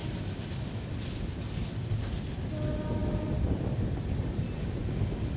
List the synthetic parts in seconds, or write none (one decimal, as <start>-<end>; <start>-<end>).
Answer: none